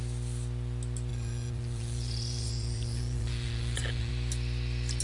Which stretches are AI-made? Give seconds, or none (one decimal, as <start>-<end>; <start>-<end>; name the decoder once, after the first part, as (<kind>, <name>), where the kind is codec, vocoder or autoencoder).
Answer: 1.1-4.1 (vocoder, Vocos)